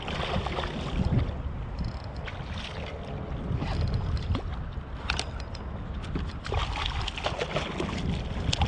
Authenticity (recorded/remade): recorded